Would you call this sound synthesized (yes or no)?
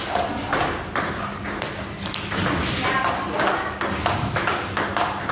no